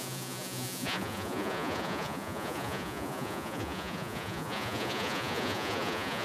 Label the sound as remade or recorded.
remade